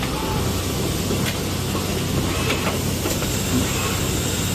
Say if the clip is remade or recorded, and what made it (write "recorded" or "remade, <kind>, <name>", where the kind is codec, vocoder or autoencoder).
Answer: recorded